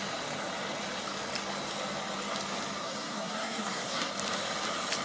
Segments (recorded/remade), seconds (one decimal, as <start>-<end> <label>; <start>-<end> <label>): 0.0-2.8 recorded; 2.8-4.1 remade; 4.1-5.0 recorded